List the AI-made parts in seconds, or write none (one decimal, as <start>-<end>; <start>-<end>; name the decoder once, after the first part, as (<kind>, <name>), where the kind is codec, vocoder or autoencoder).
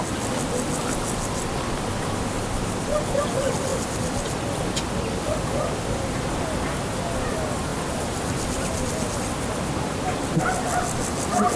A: none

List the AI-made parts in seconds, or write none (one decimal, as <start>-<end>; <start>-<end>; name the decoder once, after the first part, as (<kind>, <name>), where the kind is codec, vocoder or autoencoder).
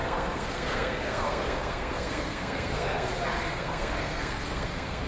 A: 0.0-3.1 (codec, SNAC); 3.5-5.1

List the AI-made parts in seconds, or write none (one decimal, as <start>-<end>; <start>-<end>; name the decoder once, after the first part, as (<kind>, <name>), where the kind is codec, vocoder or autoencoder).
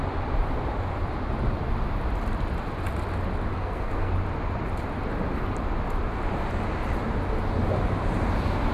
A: 3.5-4.1 (codec, SNAC)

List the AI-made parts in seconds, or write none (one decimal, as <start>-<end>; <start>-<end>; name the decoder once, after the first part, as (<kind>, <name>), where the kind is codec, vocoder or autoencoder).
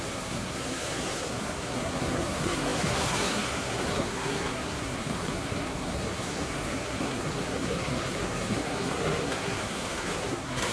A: 0.0-10.7 (codec, SNAC)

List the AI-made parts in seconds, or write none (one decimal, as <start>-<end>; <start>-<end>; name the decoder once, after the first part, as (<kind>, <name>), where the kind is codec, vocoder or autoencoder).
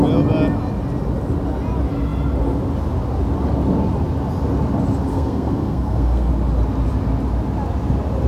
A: 5.1-6.3 (codec, SNAC)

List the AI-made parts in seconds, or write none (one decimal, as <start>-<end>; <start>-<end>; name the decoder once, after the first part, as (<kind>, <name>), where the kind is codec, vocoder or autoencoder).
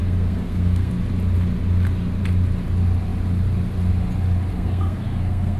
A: 0.0-0.9 (codec, SNAC); 4.5-5.6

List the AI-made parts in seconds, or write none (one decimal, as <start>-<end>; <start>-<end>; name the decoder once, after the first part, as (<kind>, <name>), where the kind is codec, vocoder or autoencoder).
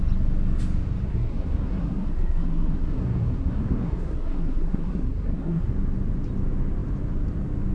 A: 1.1-5.7 (codec, SNAC)